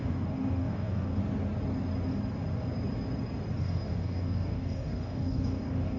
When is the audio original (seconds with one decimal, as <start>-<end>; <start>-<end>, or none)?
1.2-3.6